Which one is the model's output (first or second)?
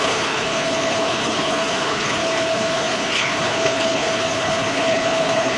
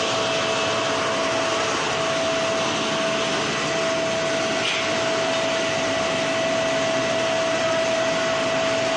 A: first